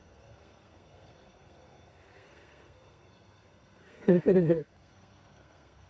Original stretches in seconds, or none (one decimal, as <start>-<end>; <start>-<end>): none